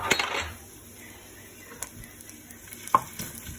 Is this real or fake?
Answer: real